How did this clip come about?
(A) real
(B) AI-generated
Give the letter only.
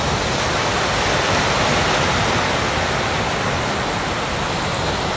A